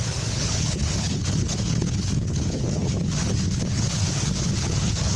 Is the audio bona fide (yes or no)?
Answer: no